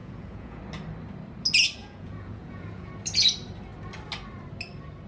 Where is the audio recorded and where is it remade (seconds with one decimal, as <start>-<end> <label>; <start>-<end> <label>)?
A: 0.0-0.6 remade; 0.6-1.8 recorded; 1.8-2.9 remade; 2.9-5.1 recorded